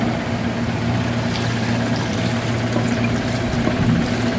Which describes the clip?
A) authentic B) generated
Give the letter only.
A